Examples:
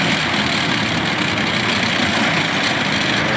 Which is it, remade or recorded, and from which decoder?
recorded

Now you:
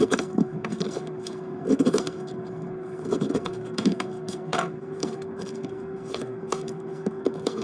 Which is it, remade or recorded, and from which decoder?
remade, codec, SNAC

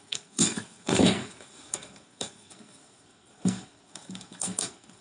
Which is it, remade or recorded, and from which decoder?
remade, codec, SNAC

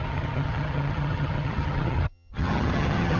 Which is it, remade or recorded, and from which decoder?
remade, vocoder, HiFi-GAN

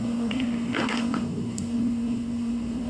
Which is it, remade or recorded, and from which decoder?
remade, codec, SNAC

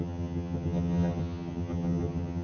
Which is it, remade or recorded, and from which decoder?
remade, vocoder, HiFi-GAN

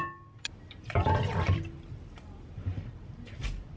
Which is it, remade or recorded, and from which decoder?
remade, vocoder, BigVGAN v2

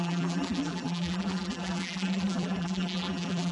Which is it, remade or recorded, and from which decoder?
remade, vocoder, BigVGAN v2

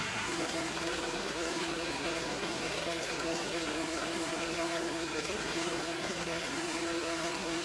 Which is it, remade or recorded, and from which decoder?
remade, codec, SNAC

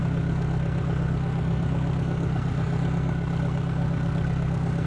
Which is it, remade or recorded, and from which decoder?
remade, codec, SNAC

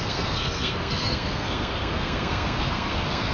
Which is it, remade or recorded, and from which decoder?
remade, codec, SNAC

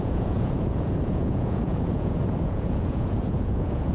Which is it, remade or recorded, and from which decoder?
remade, vocoder, Vocos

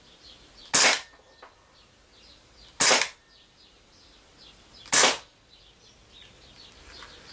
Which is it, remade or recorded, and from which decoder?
recorded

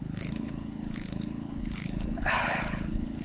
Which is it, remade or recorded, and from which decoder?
remade, codec, HILCodec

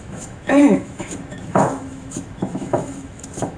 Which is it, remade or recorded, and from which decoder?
remade, autoencoder, DAC-VAE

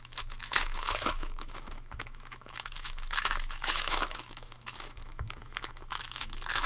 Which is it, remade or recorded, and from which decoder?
remade, autoencoder, DAC-VAE